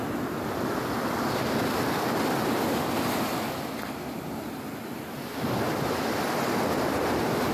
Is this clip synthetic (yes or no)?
no